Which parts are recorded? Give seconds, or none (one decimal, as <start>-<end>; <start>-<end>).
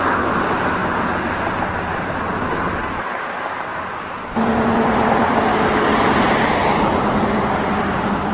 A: 0.0-8.3